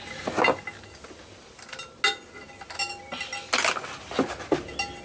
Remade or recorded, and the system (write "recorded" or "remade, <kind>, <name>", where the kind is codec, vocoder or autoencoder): recorded